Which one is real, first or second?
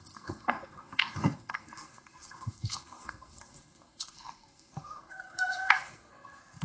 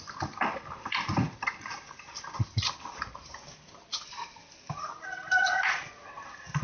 second